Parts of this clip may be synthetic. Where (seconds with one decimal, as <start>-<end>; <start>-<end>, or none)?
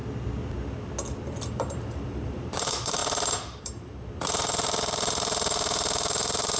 1.5-3.0; 3.6-6.6